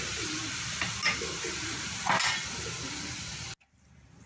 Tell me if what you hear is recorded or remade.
recorded